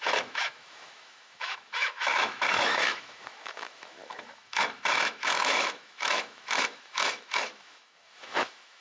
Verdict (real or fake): fake